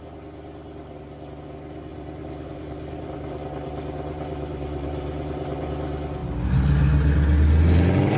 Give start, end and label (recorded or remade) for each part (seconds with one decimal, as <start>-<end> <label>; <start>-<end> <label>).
0.0-1.9 recorded; 1.9-5.7 remade; 5.7-8.2 recorded